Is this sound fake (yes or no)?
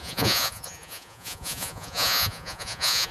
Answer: yes